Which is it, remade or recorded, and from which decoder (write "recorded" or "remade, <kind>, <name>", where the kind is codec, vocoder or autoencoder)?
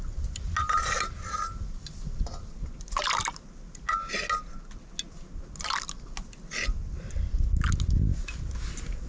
recorded